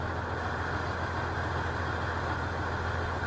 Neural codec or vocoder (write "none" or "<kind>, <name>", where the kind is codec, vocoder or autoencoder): none